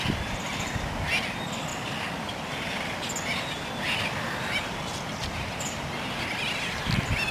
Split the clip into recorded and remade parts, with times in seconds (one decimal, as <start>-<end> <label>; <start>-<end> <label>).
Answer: 0.0-7.3 recorded

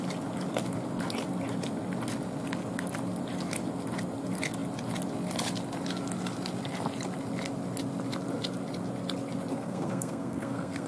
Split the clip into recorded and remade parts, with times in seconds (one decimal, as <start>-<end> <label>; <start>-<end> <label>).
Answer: 0.0-9.5 recorded; 9.5-10.9 remade

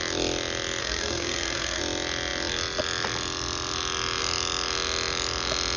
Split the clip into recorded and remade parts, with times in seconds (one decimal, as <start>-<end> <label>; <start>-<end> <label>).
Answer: 0.0-0.8 recorded; 0.8-1.8 remade; 1.8-5.8 recorded

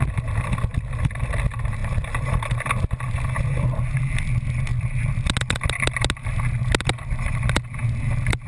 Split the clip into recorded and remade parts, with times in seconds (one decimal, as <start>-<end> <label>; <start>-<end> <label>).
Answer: 0.0-8.5 recorded

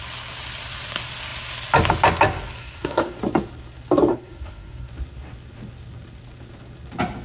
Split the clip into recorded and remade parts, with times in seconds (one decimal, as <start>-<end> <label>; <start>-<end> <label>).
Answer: 0.0-2.6 recorded; 2.6-3.2 remade; 3.2-4.1 recorded; 4.1-4.9 remade; 4.9-7.2 recorded